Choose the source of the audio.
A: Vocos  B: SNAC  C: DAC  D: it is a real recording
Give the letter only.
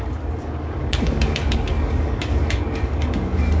C